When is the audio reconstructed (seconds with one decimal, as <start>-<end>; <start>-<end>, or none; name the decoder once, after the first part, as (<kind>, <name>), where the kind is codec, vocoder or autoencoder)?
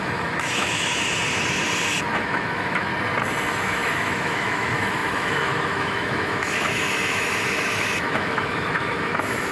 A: 0.0-0.9 (autoencoder, DAC-VAE); 2.0-2.9; 3.5-9.5